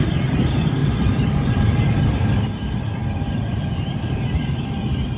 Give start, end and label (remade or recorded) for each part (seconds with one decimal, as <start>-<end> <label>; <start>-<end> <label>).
0.0-0.8 recorded; 0.8-2.0 remade; 2.0-3.0 recorded; 3.0-5.2 remade